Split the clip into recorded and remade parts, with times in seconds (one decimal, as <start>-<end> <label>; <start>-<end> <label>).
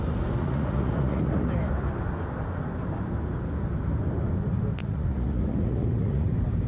0.0-0.4 recorded; 0.4-1.4 remade; 1.4-4.8 recorded; 4.8-6.3 remade; 6.3-6.7 recorded